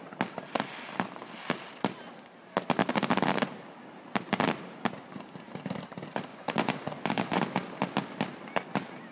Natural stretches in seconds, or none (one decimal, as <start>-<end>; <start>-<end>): 0.0-6.3; 7.4-9.1